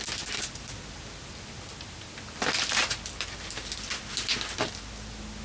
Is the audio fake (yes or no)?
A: no